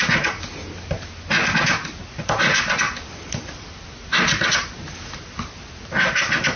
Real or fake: real